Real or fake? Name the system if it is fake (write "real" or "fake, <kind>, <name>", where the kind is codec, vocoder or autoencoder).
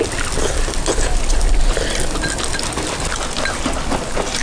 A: real